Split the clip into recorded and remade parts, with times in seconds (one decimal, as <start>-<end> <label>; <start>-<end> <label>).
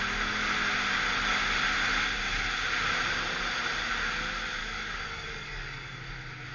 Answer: 0.0-4.6 recorded; 4.6-6.0 remade; 6.0-6.5 recorded